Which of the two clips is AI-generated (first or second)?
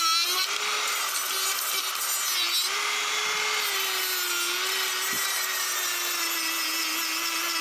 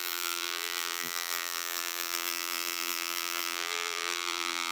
second